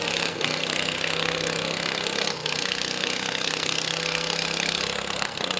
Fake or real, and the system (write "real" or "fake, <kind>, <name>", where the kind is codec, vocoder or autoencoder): fake, codec, SNAC